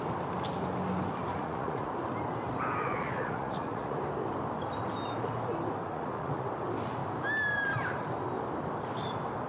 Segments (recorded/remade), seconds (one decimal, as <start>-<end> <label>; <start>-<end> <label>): 0.0-1.3 recorded; 1.3-1.9 remade; 1.9-2.8 recorded; 2.8-4.0 remade; 4.0-5.8 recorded; 5.8-6.5 remade; 6.5-9.5 recorded